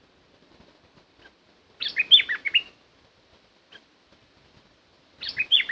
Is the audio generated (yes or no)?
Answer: yes